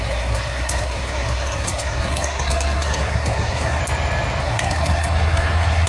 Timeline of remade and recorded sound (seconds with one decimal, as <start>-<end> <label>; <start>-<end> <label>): 0.0-3.8 remade; 3.8-4.4 recorded; 4.4-5.9 remade